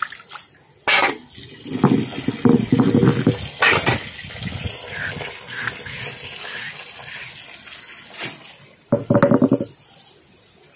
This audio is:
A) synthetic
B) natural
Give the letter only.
B